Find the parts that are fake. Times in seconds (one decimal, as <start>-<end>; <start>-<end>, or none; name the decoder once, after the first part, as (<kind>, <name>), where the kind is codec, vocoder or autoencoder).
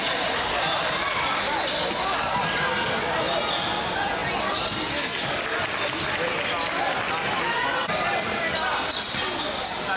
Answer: none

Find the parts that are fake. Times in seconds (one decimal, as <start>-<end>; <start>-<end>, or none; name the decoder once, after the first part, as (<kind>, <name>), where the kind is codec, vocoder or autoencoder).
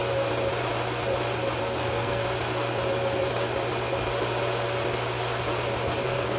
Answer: 1.6-2.2 (codec, SNAC); 6.0-6.4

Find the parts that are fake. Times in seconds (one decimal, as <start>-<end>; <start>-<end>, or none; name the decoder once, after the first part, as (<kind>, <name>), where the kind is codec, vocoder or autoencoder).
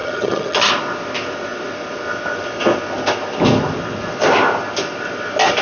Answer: 0.0-0.7 (vocoder, HiFi-GAN)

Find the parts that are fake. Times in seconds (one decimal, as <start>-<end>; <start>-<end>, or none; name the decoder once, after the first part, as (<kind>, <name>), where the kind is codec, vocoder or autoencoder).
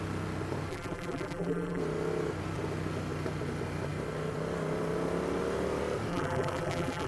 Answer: 0.7-1.8 (vocoder, BigVGAN v2); 6.1-7.1